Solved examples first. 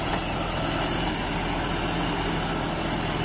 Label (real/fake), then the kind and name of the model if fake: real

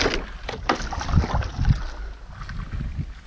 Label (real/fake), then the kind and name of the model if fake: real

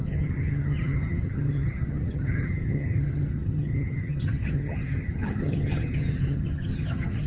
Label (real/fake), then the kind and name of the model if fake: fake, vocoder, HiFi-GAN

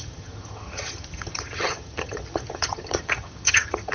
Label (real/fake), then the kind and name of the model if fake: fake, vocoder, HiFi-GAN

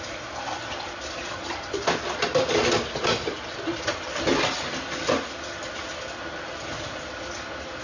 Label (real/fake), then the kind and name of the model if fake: real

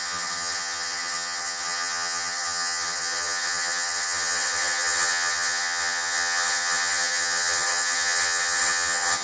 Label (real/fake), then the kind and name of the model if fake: fake, vocoder, HiFi-GAN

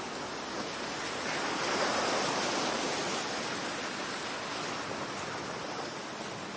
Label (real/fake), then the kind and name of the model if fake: real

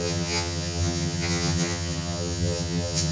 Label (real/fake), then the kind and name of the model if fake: fake, vocoder, HiFi-GAN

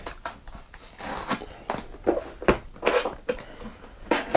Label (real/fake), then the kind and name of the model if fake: real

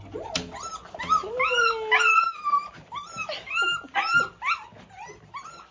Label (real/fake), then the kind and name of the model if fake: real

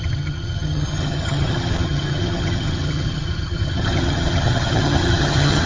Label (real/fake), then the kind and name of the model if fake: fake, vocoder, HiFi-GAN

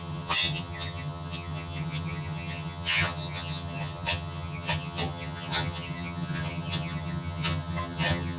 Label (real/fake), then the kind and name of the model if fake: fake, vocoder, HiFi-GAN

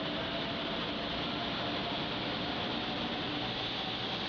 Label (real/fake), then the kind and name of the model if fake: real